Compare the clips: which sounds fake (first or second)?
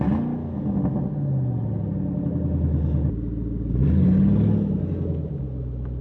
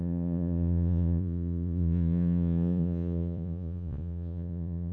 second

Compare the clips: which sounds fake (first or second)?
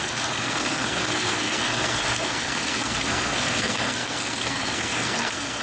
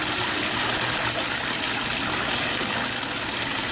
first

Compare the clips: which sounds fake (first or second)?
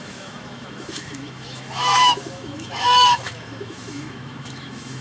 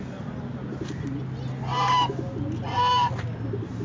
first